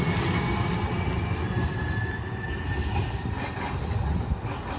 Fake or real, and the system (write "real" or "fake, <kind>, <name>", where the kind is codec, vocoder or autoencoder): real